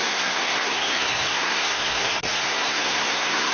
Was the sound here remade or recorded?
remade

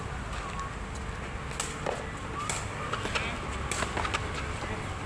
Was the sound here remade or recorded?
recorded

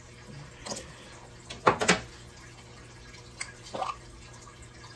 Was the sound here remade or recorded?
recorded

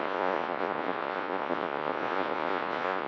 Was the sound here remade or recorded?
remade